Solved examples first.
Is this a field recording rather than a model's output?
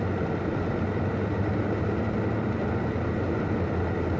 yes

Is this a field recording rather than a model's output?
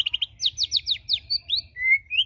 yes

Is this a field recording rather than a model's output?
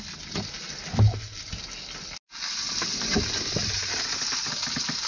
yes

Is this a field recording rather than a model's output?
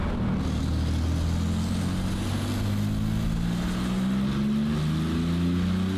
yes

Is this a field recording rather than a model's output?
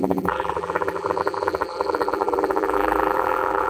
no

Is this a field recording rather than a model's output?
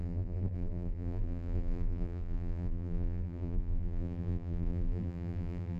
no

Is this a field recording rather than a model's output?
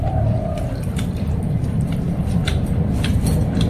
no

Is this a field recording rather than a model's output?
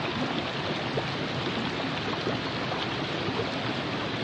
yes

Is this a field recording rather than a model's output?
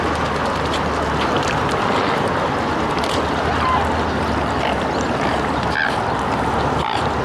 yes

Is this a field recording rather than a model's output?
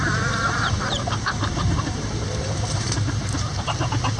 no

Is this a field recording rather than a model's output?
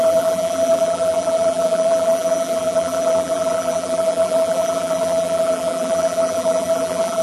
no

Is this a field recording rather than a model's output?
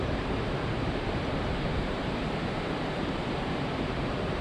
no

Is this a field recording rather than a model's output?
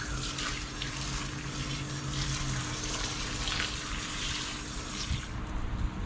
yes